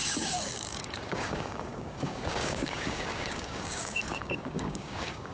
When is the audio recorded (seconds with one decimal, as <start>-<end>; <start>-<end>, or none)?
none